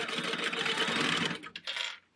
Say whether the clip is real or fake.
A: real